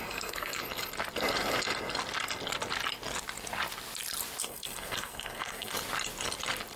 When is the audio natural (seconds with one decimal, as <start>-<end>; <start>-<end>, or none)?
0.6-4.4; 5.7-6.8